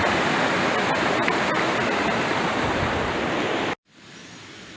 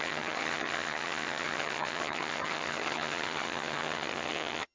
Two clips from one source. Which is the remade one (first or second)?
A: second